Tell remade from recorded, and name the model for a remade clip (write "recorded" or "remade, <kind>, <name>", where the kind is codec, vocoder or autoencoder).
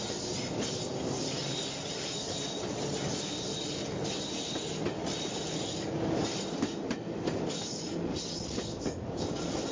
recorded